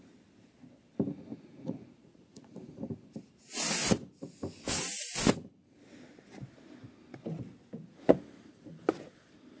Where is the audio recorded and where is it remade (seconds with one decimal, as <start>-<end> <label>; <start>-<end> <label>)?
0.0-1.3 recorded; 1.3-2.8 remade; 2.8-9.6 recorded